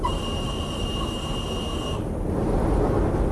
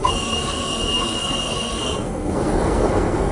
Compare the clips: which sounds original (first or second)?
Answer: first